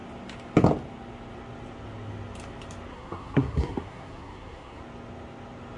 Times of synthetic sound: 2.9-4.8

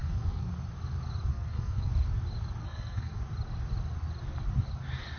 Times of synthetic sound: 0.0-0.5; 1.3-1.9; 2.6-3.2

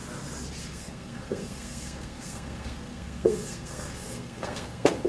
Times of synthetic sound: 0.6-5.1

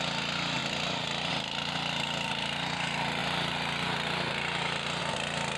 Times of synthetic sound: none

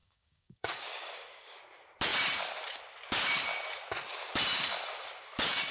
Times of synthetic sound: 0.0-1.6

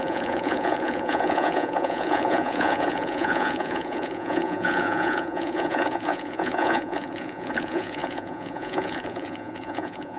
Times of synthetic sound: 0.0-10.2

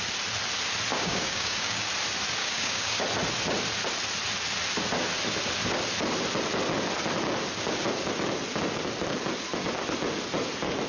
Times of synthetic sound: 0.9-1.9; 2.4-3.0